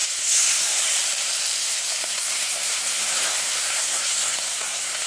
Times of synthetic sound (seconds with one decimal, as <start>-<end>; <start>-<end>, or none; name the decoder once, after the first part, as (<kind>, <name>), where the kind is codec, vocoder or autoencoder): 0.0-0.8 (codec, SNAC); 1.6-5.1